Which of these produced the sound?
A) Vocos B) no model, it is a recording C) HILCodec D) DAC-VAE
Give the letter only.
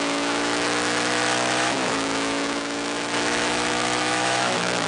D